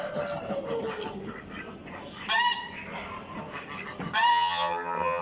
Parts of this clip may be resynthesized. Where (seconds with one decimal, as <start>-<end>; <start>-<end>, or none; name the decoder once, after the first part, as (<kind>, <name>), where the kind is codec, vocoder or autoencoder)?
4.3-5.2 (vocoder, HiFi-GAN)